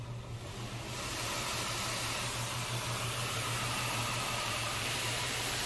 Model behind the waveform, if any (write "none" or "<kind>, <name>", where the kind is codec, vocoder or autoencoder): vocoder, BigVGAN v2